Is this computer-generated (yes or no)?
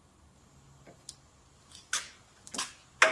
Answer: no